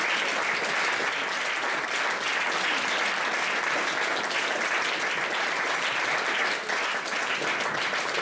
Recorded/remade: recorded